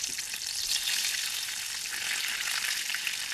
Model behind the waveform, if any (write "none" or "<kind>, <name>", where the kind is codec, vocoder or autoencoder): none